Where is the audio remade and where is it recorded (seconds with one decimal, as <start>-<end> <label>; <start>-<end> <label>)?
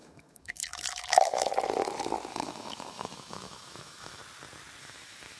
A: 0.0-1.5 remade; 1.5-2.3 recorded; 2.3-4.2 remade; 4.2-4.8 recorded; 4.8-5.4 remade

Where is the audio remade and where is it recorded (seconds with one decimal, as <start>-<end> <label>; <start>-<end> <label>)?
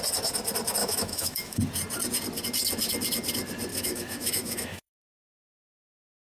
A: 0.0-0.8 recorded; 0.8-1.6 remade; 1.6-3.7 recorded; 3.7-5.8 remade; 5.8-6.3 recorded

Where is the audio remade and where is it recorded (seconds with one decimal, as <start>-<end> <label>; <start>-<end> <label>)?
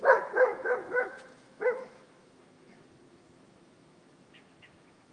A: 0.0-5.1 remade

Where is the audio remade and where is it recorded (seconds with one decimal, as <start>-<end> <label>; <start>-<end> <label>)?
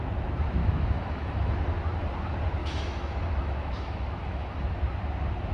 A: 0.0-0.6 recorded; 0.6-1.5 remade; 1.5-2.6 recorded; 2.6-4.8 remade; 4.8-5.5 recorded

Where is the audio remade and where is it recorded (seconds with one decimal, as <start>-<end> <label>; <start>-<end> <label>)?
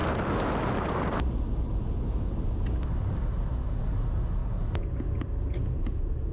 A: 0.0-6.3 recorded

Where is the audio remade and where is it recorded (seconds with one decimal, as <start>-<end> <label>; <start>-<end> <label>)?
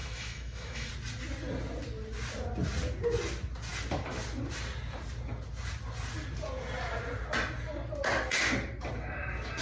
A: 0.0-0.9 remade; 0.9-9.6 recorded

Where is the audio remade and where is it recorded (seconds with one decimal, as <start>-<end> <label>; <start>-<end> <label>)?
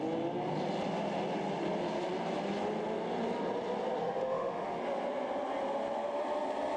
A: 0.0-4.0 recorded; 4.0-4.8 remade; 4.8-6.8 recorded